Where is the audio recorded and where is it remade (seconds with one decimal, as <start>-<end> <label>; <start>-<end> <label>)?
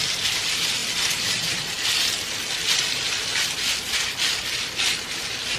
0.0-5.6 recorded